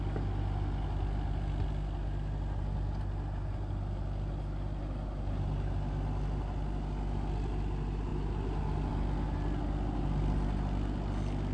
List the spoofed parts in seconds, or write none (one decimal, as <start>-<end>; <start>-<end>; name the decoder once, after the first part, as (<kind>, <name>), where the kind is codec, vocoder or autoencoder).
none